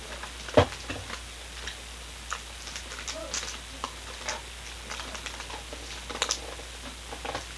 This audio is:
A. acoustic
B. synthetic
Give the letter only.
A